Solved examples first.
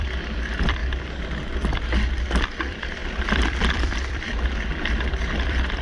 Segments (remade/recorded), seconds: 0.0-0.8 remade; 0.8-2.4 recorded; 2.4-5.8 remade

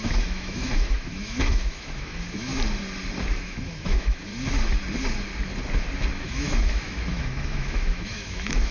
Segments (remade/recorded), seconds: 0.0-2.5 remade; 2.5-3.3 recorded; 3.3-4.3 remade; 4.3-6.2 recorded; 6.2-8.7 remade

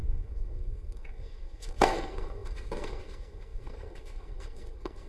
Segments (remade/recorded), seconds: 0.0-5.1 remade

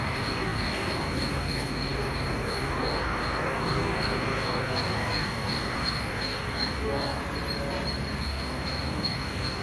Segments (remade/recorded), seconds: 0.0-7.2 remade; 7.2-8.2 recorded; 8.2-9.6 remade